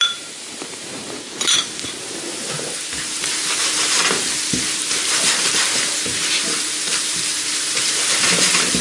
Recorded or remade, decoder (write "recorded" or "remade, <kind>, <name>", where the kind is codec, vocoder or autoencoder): remade, vocoder, BigVGAN v2